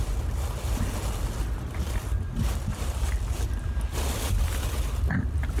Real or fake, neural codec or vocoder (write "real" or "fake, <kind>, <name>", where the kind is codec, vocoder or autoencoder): real